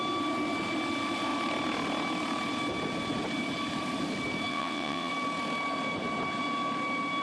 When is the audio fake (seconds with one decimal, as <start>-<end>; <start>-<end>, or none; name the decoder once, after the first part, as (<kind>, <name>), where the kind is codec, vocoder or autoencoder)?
4.5-5.1 (vocoder, WaveNeXt)